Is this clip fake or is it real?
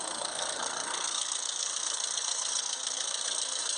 fake